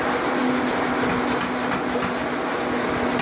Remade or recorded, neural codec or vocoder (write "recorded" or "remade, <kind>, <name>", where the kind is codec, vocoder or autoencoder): recorded